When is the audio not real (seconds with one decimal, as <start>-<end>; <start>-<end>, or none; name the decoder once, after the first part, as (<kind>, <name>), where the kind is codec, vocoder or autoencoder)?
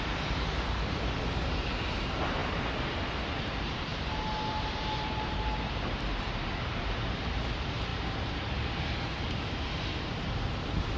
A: 0.0-2.4 (vocoder, BigVGAN v2); 3.4-11.0